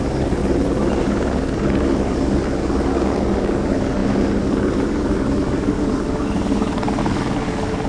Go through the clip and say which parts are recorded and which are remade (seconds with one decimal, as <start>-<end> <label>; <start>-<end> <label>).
0.0-0.4 remade; 0.4-1.0 recorded; 1.0-7.9 remade